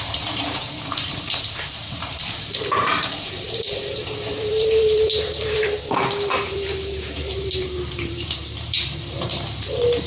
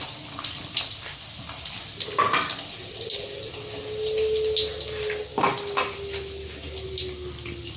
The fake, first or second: first